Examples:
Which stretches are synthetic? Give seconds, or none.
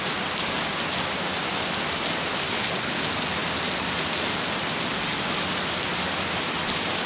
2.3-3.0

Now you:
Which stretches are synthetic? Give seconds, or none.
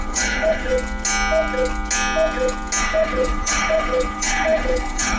0.0-0.7; 2.8-5.2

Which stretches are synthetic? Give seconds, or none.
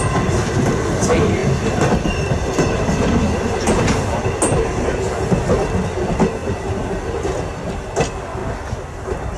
none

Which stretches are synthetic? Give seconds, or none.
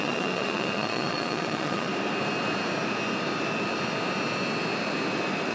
0.0-1.9